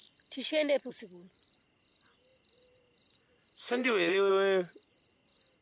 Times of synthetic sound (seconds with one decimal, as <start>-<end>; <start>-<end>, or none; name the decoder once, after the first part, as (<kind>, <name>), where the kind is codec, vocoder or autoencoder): 2.3-4.3 (vocoder, BigVGAN v2)